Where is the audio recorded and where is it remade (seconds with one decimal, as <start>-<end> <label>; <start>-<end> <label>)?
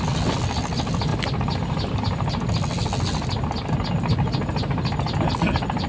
0.0-5.9 recorded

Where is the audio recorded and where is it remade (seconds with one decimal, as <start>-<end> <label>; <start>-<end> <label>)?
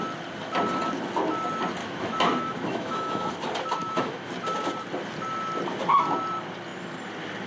0.0-1.8 recorded; 1.8-3.3 remade; 3.3-3.8 recorded; 3.8-4.3 remade; 4.3-7.5 recorded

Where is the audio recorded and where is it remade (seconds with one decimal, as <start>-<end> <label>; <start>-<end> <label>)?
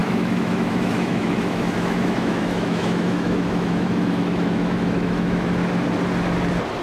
0.0-5.6 remade; 5.6-6.8 recorded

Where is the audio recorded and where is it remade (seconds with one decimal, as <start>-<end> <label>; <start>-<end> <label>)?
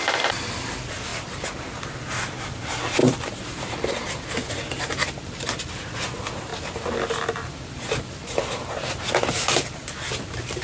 0.0-10.6 recorded